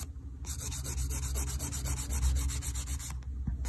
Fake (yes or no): no